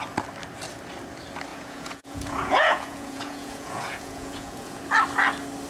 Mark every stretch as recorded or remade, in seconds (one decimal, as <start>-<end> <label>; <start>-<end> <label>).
0.0-1.5 recorded; 1.5-4.8 remade; 4.8-5.7 recorded

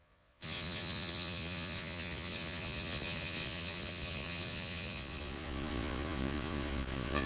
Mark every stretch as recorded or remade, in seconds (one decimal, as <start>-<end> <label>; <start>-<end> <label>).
0.0-7.3 remade

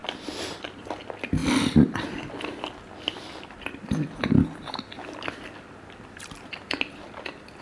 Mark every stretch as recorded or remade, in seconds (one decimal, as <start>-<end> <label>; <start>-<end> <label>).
0.0-7.6 recorded

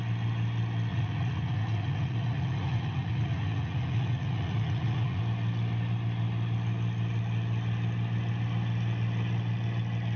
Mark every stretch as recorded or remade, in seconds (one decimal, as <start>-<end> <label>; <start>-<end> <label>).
0.0-0.9 recorded; 0.9-5.2 remade; 5.2-10.2 recorded

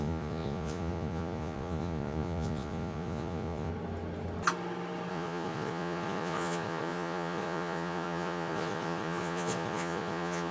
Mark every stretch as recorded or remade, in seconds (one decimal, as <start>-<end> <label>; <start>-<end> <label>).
0.0-3.7 remade; 3.7-5.1 recorded; 5.1-10.5 remade

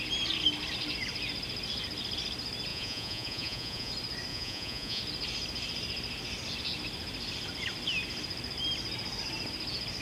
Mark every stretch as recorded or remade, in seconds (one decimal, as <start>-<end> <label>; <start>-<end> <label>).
0.0-2.7 recorded; 2.7-3.9 remade; 3.9-4.3 recorded; 4.3-5.0 remade; 5.0-10.0 recorded